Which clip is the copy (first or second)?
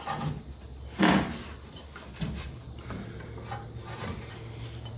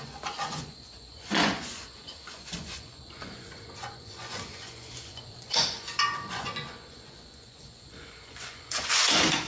second